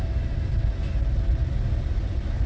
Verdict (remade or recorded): recorded